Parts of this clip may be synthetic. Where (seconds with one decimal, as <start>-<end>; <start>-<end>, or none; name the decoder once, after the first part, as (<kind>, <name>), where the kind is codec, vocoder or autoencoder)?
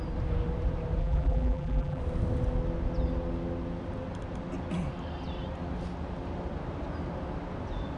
1.0-2.0 (vocoder, BigVGAN v2)